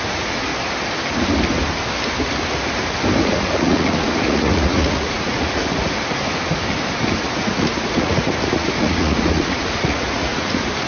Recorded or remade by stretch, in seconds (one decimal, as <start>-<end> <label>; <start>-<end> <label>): 0.0-0.5 remade; 0.5-3.2 recorded; 3.2-5.6 remade; 5.6-7.2 recorded; 7.2-10.9 remade